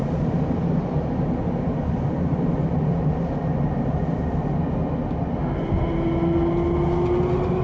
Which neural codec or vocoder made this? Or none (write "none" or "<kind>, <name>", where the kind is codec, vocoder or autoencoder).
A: none